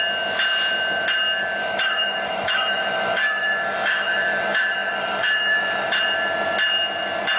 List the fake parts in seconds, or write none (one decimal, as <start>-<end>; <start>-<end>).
1.6-6.0